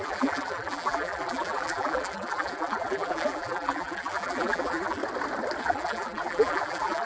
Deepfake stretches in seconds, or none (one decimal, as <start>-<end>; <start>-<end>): 0.0-5.0; 5.6-7.1